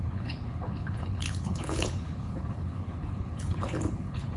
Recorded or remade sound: remade